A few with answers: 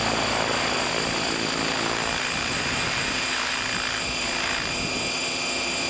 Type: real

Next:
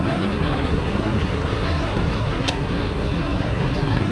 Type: fake